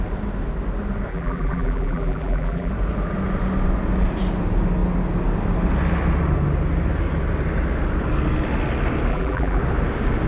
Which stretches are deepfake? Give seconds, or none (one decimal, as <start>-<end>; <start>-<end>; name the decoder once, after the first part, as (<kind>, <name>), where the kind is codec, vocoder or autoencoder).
1.1-2.7 (vocoder, BigVGAN v2); 9.1-9.6